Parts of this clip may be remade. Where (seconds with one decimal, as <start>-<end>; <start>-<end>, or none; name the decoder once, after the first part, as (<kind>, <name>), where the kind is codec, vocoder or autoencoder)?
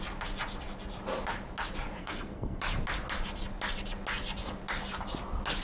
2.0-2.6 (codec, SNAC)